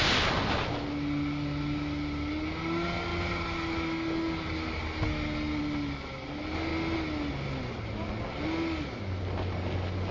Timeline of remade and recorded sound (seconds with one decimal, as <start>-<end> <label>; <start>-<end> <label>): 0.0-10.1 recorded